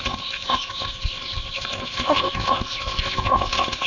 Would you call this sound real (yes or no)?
no